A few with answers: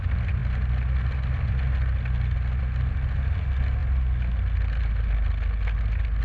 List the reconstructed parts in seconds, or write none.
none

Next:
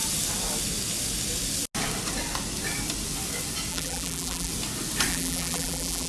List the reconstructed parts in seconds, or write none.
3.7-4.5 (vocoder, BigVGAN v2); 5.1-6.1

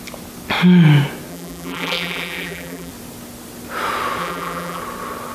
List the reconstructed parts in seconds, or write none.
1.3-2.9 (vocoder, BigVGAN v2); 4.2-4.8

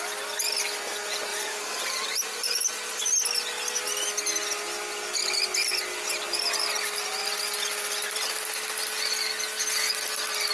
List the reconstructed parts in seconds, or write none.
1.3-3.0 (vocoder, BigVGAN v2)

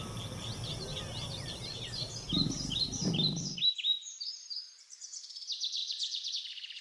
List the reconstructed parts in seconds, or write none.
0.9-3.6 (vocoder, BigVGAN v2); 4.1-5.0; 5.8-6.3

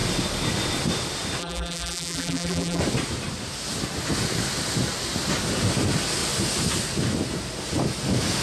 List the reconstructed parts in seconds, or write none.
1.4-2.8 (vocoder, BigVGAN v2)